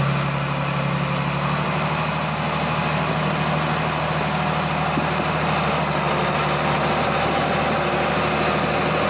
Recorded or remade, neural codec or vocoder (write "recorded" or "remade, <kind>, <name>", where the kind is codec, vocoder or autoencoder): recorded